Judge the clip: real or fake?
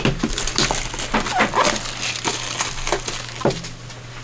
real